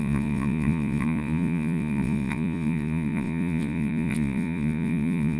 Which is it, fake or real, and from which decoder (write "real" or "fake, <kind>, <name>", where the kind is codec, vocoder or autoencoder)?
fake, vocoder, Vocos